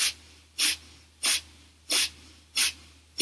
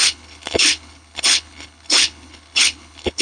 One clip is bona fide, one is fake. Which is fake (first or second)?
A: second